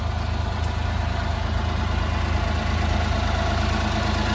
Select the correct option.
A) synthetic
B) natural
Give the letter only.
B